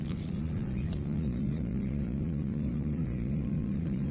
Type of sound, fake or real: fake